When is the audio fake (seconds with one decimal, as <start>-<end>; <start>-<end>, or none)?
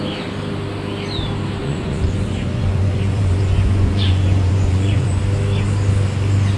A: 1.6-5.2